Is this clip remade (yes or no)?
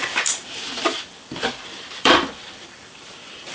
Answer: yes